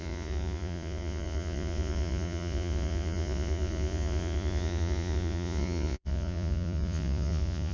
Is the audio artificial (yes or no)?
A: yes